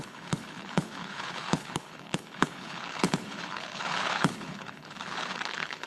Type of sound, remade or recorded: remade